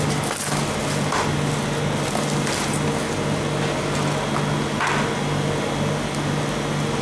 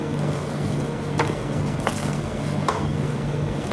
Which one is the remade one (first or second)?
second